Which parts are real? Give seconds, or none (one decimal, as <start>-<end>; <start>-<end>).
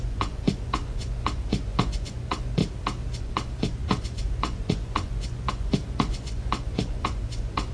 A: 2.6-3.2